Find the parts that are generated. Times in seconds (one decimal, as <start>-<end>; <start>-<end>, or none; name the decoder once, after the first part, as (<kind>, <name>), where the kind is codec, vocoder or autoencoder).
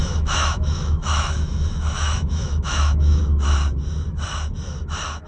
0.0-3.2 (autoencoder, DAC-VAE)